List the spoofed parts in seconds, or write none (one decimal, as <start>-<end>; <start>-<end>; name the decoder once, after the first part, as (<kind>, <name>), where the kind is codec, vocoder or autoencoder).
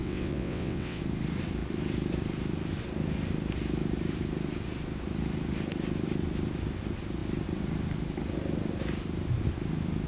0.0-1.0 (vocoder, WaveNeXt)